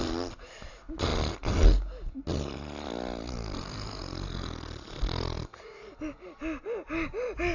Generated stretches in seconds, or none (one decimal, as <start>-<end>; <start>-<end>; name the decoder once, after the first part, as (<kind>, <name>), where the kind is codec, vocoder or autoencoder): none

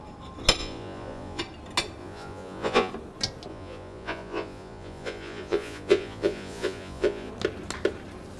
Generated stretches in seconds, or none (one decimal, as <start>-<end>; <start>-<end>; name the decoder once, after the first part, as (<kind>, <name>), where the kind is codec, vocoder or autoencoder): 0.6-1.4 (vocoder, Vocos); 2.0-2.9; 3.5-7.3

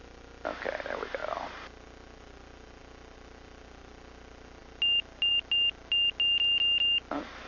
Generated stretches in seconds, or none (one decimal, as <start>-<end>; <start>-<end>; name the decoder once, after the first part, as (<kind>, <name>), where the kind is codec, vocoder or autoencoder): none